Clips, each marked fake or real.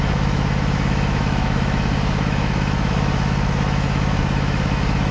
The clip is fake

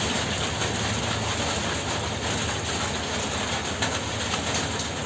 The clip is real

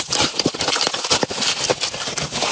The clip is real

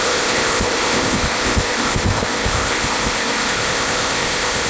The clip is fake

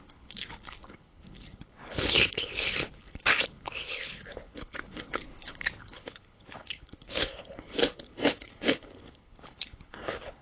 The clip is fake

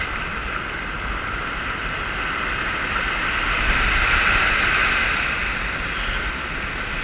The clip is real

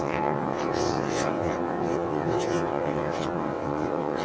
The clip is fake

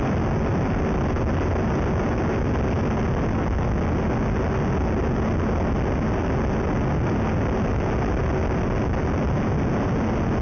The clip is real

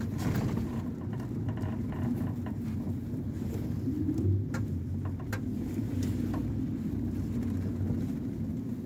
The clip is real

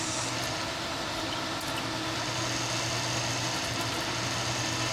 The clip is real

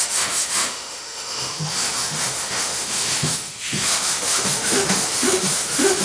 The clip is fake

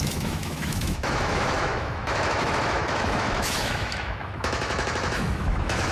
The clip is fake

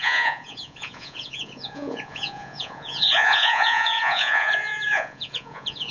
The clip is fake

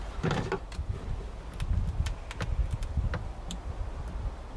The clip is real